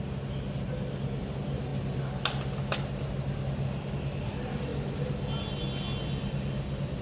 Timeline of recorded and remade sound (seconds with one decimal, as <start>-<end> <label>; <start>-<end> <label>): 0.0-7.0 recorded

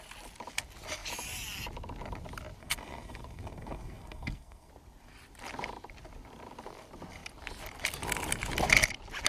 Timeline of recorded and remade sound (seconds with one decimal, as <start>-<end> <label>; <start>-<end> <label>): 0.0-2.6 recorded; 2.6-4.7 remade; 4.7-9.3 recorded

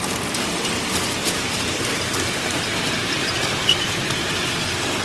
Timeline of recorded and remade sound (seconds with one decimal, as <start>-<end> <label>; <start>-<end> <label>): 0.0-1.2 recorded; 1.2-2.8 remade; 2.8-3.2 recorded; 3.2-4.6 remade; 4.6-5.0 recorded